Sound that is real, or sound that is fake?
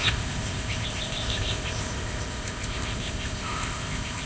fake